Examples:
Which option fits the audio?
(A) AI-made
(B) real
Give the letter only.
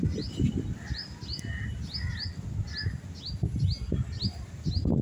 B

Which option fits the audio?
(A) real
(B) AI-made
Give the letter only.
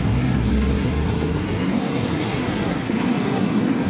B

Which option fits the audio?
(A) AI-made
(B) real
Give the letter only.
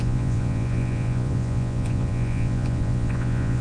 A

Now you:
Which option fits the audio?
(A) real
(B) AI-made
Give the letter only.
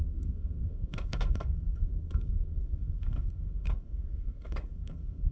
B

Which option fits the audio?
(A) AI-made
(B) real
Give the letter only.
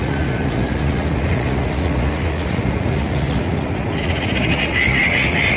A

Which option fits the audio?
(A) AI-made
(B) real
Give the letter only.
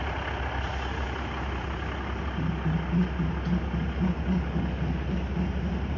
B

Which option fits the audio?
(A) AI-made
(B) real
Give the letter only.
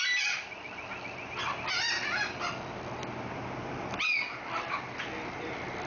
B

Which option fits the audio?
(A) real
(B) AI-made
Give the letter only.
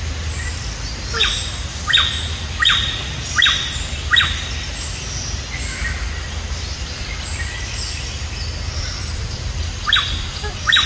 A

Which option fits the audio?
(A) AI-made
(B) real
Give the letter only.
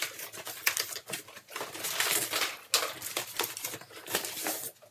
B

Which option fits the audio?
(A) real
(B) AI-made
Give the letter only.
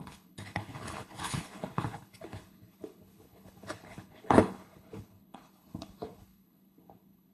B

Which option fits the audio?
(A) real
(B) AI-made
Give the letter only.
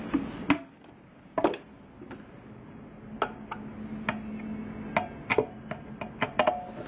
A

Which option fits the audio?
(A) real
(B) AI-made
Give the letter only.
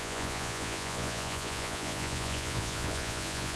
B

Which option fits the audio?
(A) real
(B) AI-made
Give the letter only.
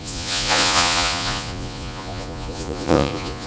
B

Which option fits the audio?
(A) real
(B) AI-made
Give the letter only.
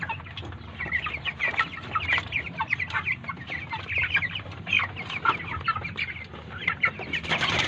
A